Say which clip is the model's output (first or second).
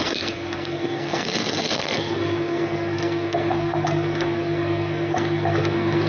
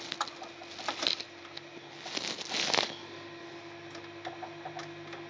first